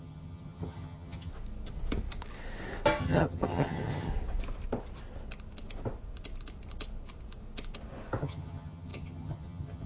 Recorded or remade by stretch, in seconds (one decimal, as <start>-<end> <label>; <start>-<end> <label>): 0.0-1.3 remade; 1.3-3.0 recorded; 3.0-4.1 remade; 4.1-8.2 recorded; 8.2-9.9 remade